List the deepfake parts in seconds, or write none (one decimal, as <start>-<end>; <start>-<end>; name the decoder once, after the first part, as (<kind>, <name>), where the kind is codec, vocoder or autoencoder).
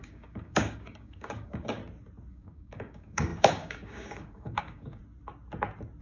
0.0-1.8 (codec, DAC); 2.3-5.0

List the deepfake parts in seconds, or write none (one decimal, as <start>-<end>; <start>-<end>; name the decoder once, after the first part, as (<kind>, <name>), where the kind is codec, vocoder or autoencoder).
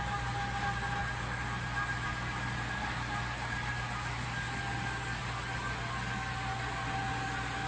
none